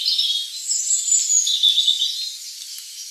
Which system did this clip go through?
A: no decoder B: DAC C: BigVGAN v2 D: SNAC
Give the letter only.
A